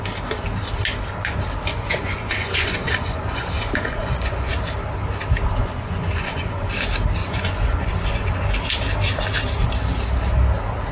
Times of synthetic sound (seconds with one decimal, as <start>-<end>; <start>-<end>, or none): 1.7-4.5; 5.6-6.7; 7.2-8.3